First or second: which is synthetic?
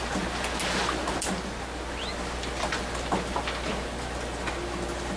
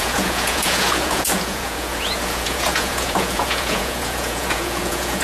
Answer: second